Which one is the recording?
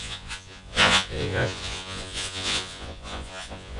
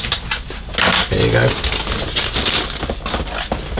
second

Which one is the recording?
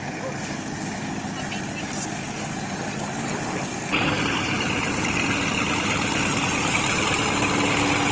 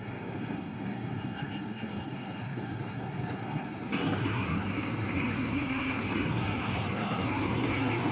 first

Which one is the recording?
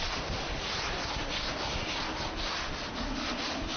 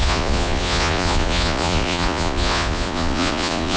first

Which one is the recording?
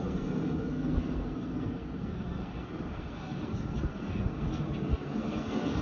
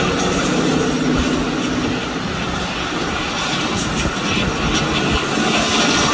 second